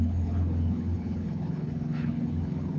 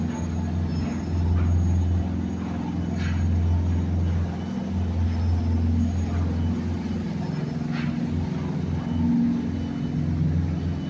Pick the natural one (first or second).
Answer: second